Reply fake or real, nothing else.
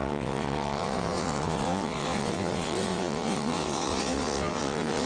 fake